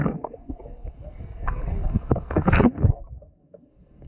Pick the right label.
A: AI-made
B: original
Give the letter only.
A